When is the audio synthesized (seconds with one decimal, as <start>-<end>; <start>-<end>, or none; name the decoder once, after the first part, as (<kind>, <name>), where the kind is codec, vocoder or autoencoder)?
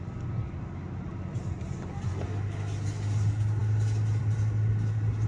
none